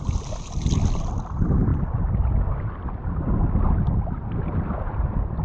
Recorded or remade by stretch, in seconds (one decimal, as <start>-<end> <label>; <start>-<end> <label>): 0.0-1.7 recorded; 1.7-4.9 remade; 4.9-5.4 recorded